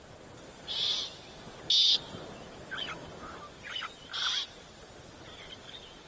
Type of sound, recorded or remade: recorded